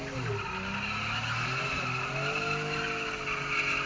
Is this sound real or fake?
real